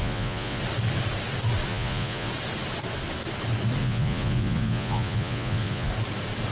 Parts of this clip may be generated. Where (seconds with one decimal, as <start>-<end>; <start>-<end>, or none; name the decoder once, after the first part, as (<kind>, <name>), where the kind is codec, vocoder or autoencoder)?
0.0-0.6 (vocoder, Vocos); 1.7-2.3; 3.8-5.9